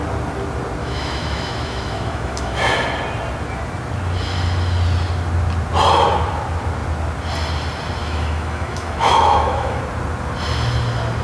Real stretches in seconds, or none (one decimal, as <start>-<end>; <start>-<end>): 0.0-0.8; 2.7-8.0; 9.8-11.2